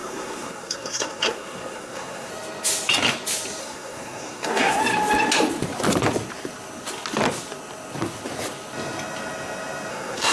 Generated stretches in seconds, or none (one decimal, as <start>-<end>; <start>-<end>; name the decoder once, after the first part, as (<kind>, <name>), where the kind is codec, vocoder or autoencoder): 0.0-2.3 (codec, SNAC); 3.6-4.8; 9.9-10.3